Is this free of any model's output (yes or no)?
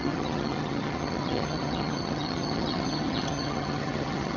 no